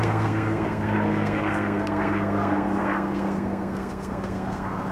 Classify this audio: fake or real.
fake